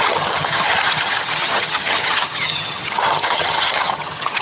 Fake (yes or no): yes